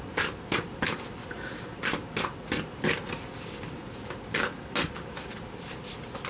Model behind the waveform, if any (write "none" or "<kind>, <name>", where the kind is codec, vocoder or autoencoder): none